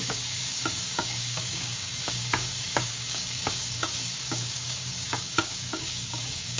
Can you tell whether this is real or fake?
fake